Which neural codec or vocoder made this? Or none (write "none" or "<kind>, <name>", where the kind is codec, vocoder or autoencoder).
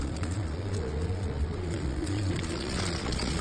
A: vocoder, Vocos